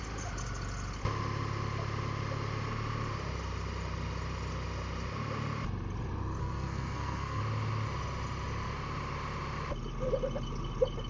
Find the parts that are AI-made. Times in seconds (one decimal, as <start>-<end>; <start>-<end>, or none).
6.4-7.4